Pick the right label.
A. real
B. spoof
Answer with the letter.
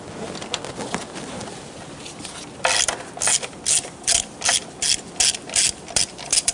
A